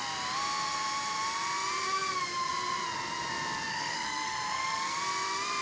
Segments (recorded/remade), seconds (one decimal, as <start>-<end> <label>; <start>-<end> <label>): 0.0-3.7 recorded; 3.7-5.0 remade; 5.0-5.6 recorded